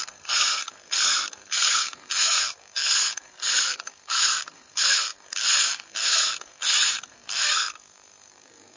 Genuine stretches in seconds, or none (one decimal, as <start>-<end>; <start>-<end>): none